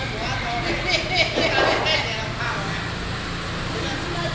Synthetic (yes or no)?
no